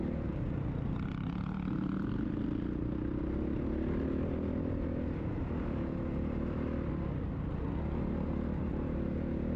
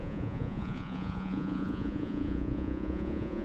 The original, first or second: first